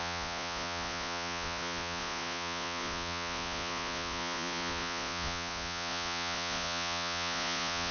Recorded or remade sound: remade